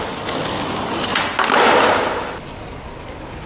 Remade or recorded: recorded